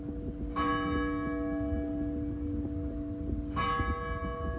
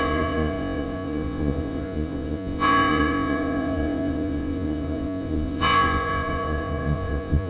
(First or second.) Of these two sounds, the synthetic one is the second